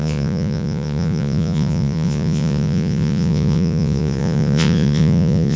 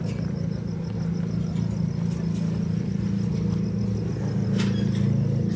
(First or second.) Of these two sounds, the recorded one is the second